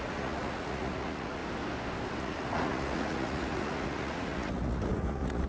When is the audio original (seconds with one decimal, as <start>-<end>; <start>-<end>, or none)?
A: 1.4-2.2